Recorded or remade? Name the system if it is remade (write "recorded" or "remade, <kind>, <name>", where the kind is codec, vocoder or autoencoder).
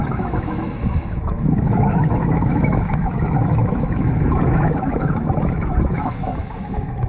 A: remade, autoencoder, DAC-VAE